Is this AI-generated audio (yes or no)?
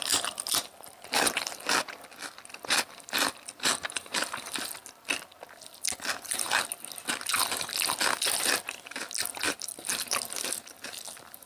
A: no